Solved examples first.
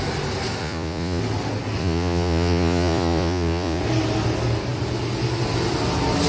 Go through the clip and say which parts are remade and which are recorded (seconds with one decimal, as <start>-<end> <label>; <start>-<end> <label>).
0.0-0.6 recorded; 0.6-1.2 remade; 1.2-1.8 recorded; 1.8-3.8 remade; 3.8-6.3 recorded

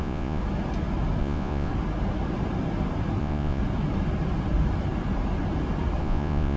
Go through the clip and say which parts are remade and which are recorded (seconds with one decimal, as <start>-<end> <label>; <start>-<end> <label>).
0.0-0.4 remade; 0.4-1.2 recorded; 1.2-1.7 remade; 1.7-3.2 recorded; 3.2-3.6 remade; 3.6-6.0 recorded; 6.0-6.6 remade

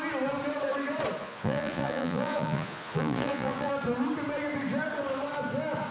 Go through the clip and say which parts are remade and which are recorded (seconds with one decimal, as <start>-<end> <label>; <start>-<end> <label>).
0.0-1.2 recorded; 1.2-3.7 remade; 3.7-5.9 recorded

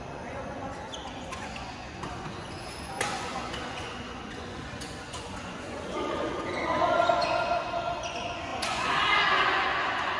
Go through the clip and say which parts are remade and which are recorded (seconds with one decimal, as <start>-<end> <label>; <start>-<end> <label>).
0.0-10.2 remade

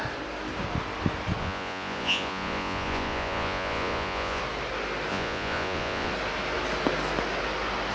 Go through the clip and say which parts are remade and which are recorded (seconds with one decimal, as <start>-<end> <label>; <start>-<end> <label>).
0.0-1.4 recorded; 1.4-4.4 remade; 4.4-5.1 recorded; 5.1-6.1 remade; 6.1-7.9 recorded

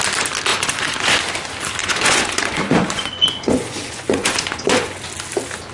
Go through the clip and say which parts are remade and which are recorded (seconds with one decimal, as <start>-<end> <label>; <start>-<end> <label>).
0.0-0.5 recorded; 0.5-1.2 remade; 1.2-1.8 recorded; 1.8-5.0 remade; 5.0-5.7 recorded